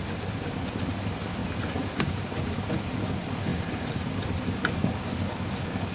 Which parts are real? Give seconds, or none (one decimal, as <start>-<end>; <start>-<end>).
0.0-1.4; 2.8-3.5; 4.1-5.9